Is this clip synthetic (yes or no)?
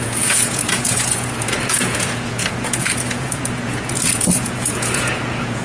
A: yes